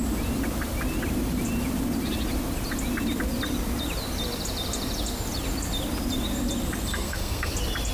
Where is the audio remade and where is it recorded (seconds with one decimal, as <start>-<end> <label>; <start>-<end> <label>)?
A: 0.0-6.9 recorded; 6.9-7.5 remade; 7.5-7.9 recorded